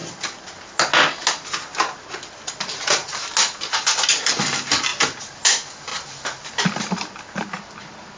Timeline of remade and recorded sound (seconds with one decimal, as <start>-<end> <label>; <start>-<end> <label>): 0.0-8.2 recorded